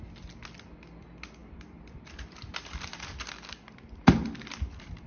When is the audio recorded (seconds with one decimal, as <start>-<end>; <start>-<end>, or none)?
0.0-1.4; 3.3-5.1